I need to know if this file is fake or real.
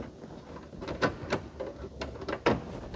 real